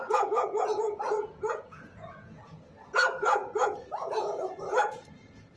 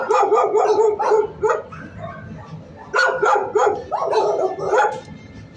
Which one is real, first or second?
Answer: second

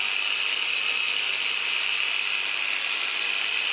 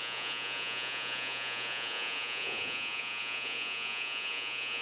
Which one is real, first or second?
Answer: first